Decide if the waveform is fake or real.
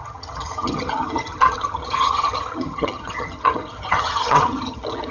fake